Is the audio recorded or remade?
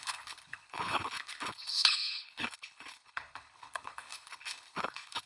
remade